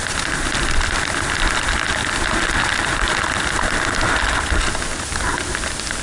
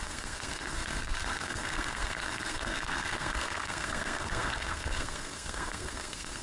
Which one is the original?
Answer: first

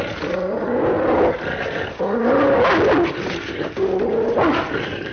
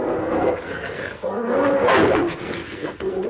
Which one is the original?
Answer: first